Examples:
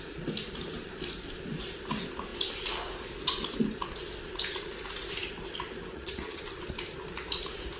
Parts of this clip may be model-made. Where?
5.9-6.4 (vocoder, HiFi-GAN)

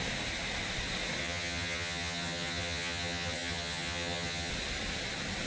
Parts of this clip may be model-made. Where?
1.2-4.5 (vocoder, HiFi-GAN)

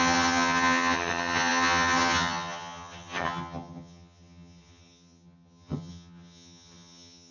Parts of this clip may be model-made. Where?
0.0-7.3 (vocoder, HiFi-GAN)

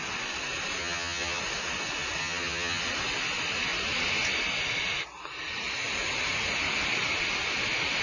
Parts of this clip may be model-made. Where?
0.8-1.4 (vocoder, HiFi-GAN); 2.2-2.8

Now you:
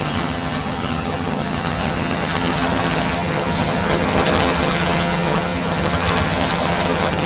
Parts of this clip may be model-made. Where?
0.0-7.3 (vocoder, HiFi-GAN)

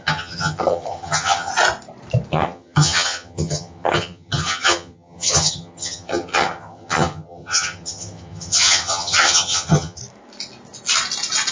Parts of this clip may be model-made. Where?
0.0-1.5 (vocoder, HiFi-GAN); 2.3-10.0

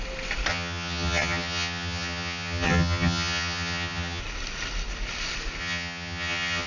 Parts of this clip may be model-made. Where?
0.5-4.2 (vocoder, HiFi-GAN); 5.6-6.7

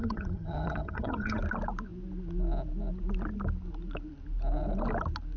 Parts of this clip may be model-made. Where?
0.0-1.4 (vocoder, HiFi-GAN)